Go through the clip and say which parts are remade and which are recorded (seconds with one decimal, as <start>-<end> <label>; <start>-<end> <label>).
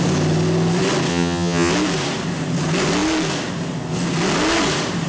0.0-1.1 recorded; 1.1-1.7 remade; 1.7-5.1 recorded